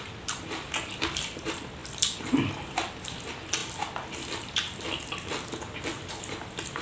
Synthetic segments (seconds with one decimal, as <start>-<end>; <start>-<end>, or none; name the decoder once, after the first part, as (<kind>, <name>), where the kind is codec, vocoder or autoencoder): none